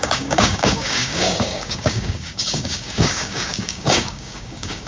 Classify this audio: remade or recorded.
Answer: remade